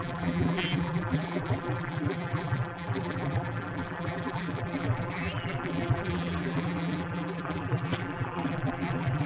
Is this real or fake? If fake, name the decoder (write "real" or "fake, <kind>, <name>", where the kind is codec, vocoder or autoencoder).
fake, vocoder, BigVGAN v2